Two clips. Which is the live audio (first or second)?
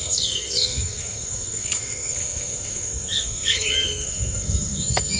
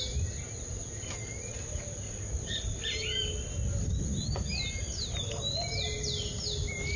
second